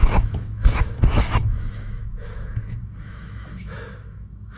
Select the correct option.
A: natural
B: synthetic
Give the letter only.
B